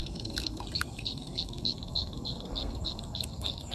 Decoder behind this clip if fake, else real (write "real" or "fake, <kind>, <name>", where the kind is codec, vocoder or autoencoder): fake, codec, SNAC